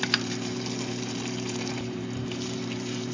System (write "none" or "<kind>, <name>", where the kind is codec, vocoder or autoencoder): vocoder, BigVGAN v2